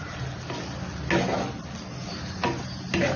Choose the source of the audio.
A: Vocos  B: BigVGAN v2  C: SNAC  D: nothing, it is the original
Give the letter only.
D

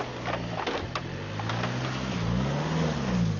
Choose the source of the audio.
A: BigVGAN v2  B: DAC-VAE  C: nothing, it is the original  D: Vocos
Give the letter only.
C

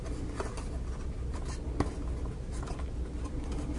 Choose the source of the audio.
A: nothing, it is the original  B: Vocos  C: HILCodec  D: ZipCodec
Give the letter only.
A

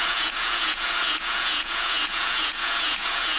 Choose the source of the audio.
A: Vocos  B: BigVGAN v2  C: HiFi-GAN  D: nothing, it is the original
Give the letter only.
A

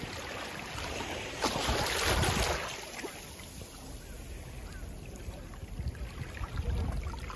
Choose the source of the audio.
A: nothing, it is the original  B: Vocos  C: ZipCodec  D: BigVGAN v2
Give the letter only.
A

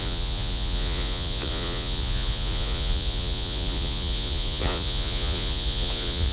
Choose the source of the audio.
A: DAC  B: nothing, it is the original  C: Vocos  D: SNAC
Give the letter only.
C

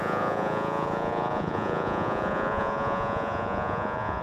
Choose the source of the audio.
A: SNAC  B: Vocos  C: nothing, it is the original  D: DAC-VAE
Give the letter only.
B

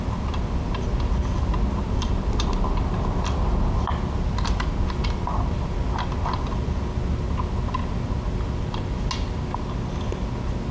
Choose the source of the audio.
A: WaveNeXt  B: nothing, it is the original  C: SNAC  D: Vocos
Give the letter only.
B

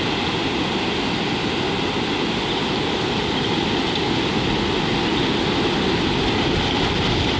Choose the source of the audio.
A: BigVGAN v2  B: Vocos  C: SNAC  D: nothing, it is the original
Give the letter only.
D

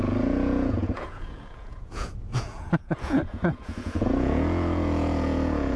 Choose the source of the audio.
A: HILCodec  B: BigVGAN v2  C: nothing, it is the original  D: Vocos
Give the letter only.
D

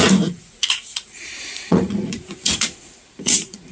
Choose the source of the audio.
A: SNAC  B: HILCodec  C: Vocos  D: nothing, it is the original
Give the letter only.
C